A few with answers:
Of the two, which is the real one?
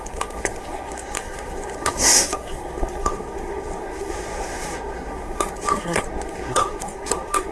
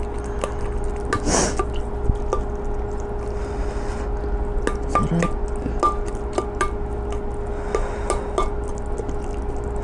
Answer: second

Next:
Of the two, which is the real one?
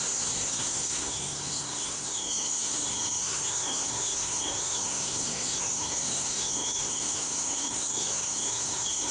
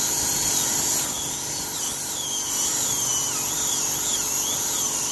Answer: second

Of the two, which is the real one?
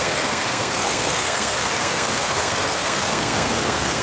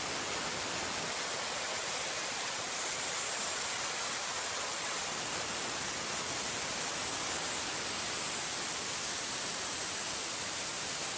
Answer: second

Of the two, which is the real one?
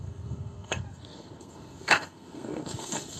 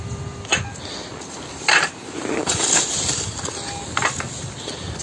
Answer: second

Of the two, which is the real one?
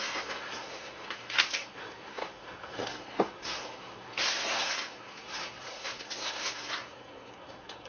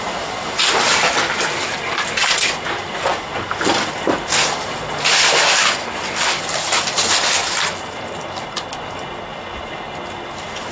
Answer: second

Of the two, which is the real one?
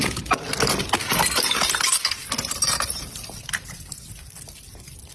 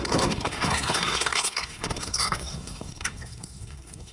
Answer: first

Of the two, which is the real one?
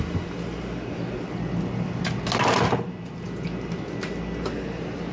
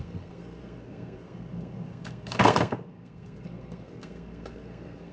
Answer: first